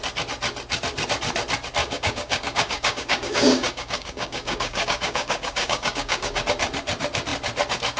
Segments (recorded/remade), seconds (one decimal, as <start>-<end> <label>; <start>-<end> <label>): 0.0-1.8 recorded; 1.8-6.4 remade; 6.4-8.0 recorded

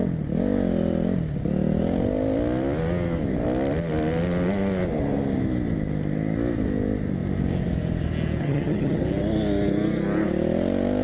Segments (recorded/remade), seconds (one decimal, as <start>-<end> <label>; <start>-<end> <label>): 0.0-8.4 recorded; 8.4-9.0 remade; 9.0-11.0 recorded

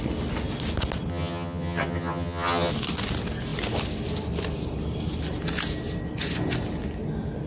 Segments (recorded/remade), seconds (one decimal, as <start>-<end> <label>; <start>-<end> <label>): 0.0-1.1 recorded; 1.1-2.7 remade; 2.7-7.5 recorded